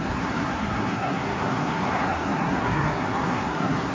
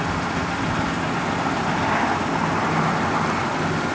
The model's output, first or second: first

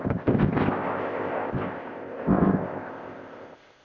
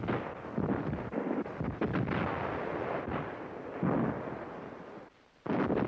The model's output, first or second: first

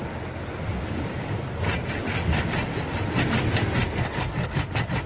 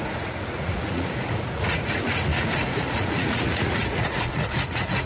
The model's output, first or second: second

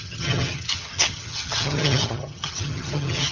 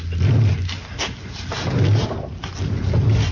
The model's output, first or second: first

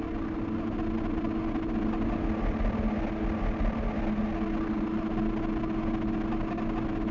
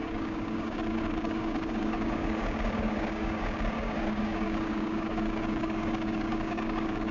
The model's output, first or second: second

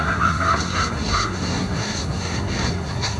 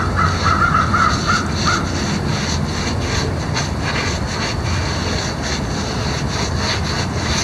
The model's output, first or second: first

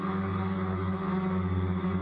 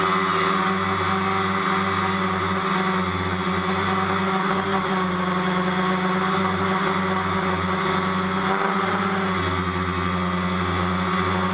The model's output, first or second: first